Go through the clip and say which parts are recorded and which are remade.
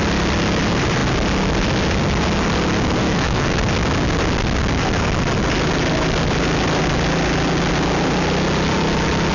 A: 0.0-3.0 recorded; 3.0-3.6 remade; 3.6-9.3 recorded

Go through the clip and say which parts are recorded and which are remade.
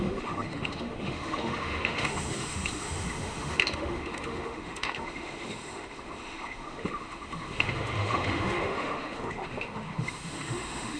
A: 0.0-11.0 remade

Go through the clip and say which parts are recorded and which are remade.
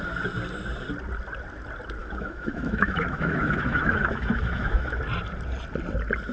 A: 0.0-2.0 recorded; 2.0-5.0 remade; 5.0-6.3 recorded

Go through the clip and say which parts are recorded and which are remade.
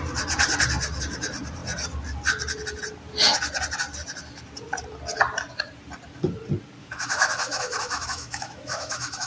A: 0.0-6.8 recorded; 6.8-9.3 remade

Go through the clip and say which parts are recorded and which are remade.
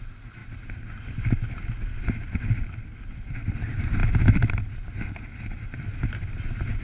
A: 0.0-6.8 recorded